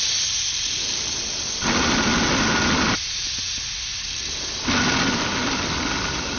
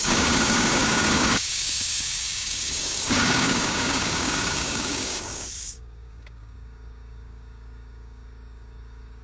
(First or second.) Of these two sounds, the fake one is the second